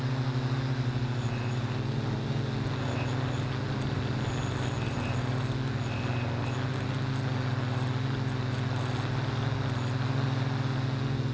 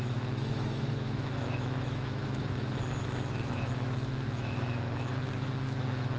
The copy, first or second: second